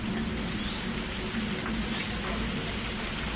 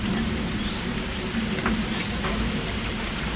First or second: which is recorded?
first